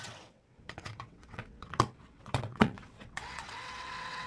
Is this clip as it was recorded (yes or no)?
no